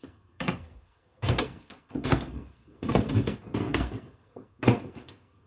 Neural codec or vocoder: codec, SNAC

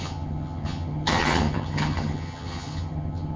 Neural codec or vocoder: vocoder, HiFi-GAN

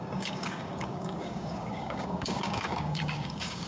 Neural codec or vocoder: codec, DAC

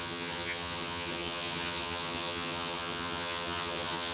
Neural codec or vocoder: vocoder, HiFi-GAN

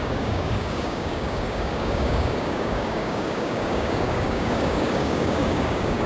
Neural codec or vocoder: codec, DAC